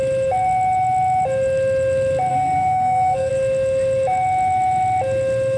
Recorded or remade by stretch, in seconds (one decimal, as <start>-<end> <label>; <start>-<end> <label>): 0.0-2.3 recorded; 2.3-3.3 remade; 3.3-5.6 recorded